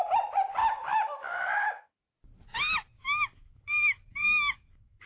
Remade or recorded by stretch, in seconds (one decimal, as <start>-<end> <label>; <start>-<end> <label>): 0.0-0.6 recorded; 0.6-2.0 remade; 2.0-2.9 recorded; 2.9-3.6 remade; 3.6-4.1 recorded; 4.1-5.1 remade